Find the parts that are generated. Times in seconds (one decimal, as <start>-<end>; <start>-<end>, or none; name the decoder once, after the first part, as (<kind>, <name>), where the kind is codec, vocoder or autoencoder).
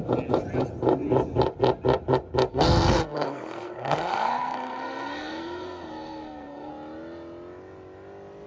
2.5-6.7 (codec, SNAC)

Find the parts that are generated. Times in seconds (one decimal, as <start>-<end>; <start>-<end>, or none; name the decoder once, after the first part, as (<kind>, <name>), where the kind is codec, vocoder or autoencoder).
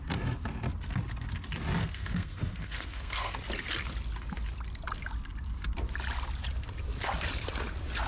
1.8-3.4 (codec, SNAC)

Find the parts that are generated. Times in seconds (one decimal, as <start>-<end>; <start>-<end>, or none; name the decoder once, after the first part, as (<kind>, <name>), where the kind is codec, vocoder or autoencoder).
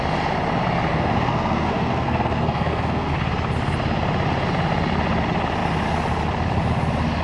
0.9-3.1 (codec, SNAC)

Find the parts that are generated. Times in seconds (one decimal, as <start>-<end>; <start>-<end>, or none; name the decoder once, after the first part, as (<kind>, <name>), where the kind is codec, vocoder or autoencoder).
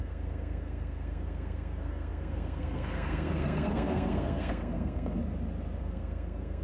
0.0-5.2 (codec, SNAC); 5.8-6.6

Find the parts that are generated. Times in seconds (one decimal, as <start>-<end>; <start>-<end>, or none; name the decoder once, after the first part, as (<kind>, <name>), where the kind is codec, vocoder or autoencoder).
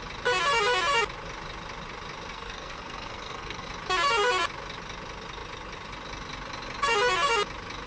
2.3-3.7 (codec, SNAC)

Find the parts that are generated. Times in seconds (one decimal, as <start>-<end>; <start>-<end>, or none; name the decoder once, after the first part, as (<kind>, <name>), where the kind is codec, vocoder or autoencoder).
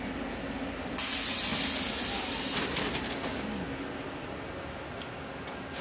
none